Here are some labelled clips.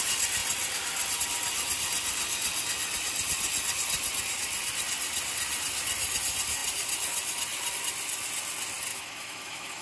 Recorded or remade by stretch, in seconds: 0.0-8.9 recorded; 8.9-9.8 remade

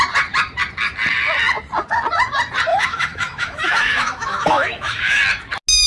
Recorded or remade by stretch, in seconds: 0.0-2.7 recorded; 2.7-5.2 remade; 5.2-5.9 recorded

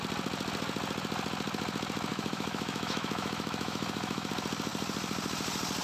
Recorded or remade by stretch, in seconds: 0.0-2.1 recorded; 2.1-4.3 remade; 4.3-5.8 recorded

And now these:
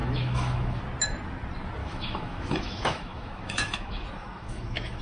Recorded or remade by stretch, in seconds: 0.0-0.8 remade; 0.8-1.8 recorded; 1.8-5.0 remade